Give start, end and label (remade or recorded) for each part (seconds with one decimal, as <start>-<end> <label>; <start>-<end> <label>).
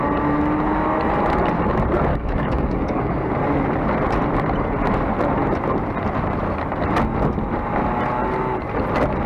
0.0-2.1 recorded; 2.1-3.3 remade; 3.3-9.3 recorded